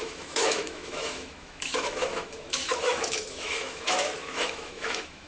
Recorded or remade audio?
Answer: remade